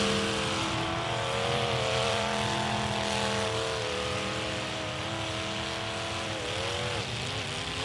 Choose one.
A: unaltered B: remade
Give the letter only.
A